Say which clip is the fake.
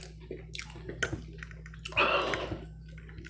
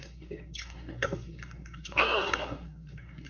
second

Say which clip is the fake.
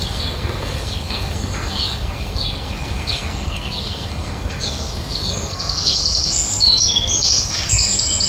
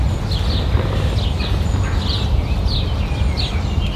first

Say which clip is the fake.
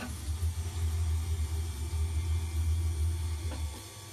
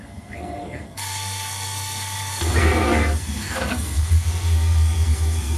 second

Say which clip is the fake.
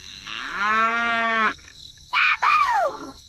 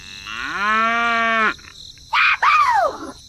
first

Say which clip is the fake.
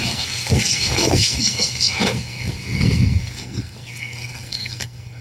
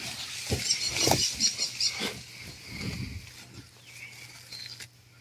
first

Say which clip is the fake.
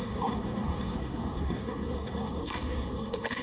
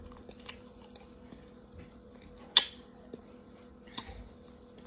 first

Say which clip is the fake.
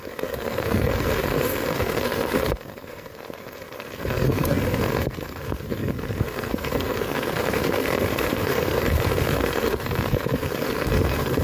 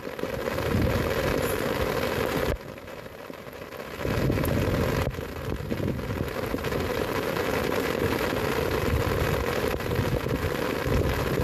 first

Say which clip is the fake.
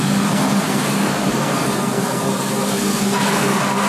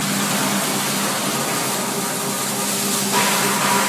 first